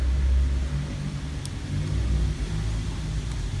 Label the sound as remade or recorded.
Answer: recorded